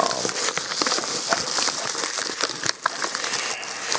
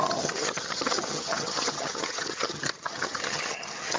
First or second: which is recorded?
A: first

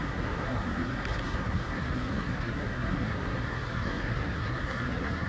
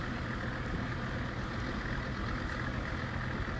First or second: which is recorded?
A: second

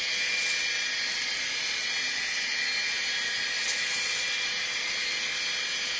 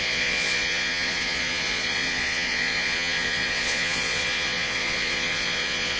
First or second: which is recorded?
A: first